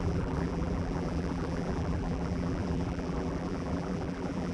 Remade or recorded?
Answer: remade